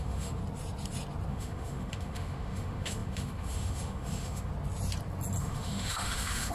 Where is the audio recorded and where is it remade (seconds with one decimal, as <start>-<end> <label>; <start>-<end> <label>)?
0.0-0.4 remade; 0.4-1.3 recorded; 1.3-4.5 remade; 4.5-5.4 recorded; 5.4-6.5 remade